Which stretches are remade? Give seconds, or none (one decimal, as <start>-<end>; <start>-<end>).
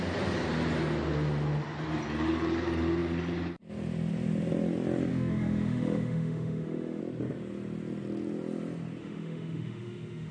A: 5.1-7.0; 9.0-10.3